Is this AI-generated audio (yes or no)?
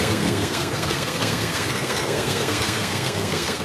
yes